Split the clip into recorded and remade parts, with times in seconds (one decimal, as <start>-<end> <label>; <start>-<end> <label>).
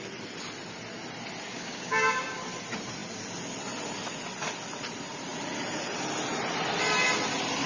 0.0-1.5 recorded; 1.5-2.4 remade; 2.4-7.7 recorded